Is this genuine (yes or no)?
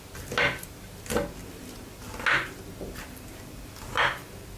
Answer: yes